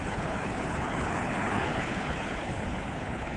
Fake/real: fake